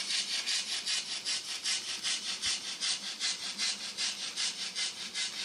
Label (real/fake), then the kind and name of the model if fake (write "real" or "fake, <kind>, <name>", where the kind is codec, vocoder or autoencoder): real